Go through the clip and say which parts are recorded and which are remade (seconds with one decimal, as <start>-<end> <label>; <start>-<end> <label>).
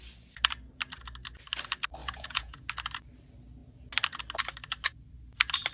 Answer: 0.0-2.0 recorded; 2.0-2.7 remade; 2.7-5.7 recorded